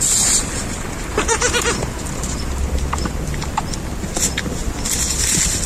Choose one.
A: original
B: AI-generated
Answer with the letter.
A